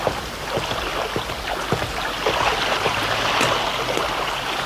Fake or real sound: real